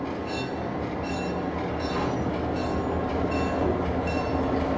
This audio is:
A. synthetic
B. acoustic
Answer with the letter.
B